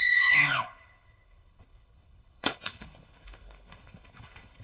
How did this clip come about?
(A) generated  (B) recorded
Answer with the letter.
A